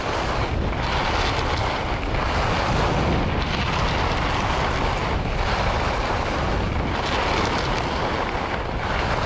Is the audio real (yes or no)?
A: yes